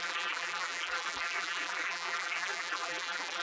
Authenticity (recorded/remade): remade